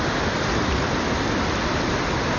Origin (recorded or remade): recorded